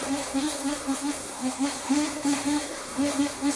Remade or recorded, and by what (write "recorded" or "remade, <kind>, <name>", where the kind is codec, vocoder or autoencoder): remade, codec, SNAC